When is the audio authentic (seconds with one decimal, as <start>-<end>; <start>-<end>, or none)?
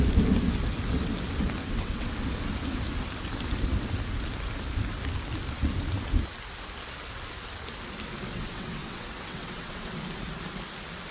0.0-1.6; 2.1-8.3; 9.9-11.1